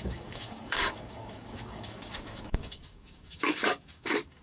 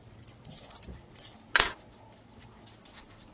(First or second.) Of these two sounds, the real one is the second